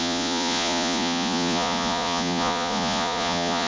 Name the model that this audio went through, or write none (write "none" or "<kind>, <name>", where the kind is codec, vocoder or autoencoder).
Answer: vocoder, Vocos